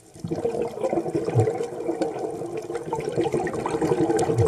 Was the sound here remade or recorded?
recorded